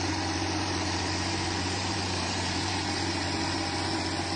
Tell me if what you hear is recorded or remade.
remade